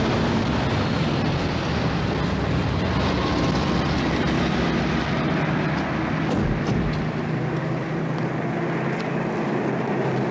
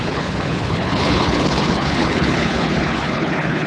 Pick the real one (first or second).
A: first